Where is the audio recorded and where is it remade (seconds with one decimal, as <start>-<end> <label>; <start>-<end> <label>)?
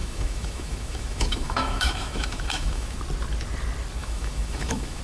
0.0-3.0 remade; 3.0-4.0 recorded; 4.0-5.0 remade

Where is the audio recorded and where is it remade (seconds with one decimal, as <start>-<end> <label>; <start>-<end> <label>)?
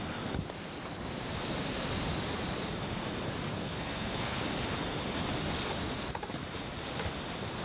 0.0-3.5 recorded; 3.5-4.4 remade; 4.4-7.6 recorded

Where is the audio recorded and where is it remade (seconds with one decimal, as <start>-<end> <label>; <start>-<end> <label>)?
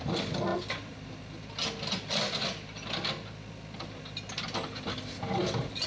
0.0-5.9 recorded